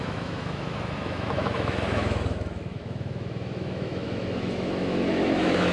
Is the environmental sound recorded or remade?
remade